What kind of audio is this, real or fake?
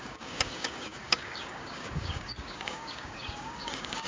fake